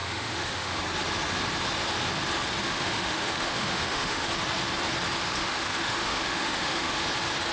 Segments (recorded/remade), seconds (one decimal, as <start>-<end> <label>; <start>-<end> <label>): 0.0-0.8 remade; 0.8-2.6 recorded; 2.6-4.3 remade; 4.3-5.4 recorded; 5.4-7.0 remade; 7.0-7.5 recorded